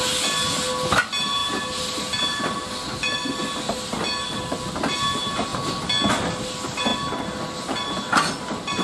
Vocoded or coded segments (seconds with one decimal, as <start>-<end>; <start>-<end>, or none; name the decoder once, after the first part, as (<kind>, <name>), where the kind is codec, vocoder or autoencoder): none